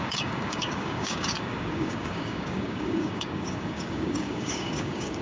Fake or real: fake